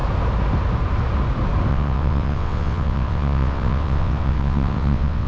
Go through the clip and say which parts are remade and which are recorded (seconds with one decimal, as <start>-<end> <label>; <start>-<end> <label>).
0.0-1.7 recorded; 1.7-5.3 remade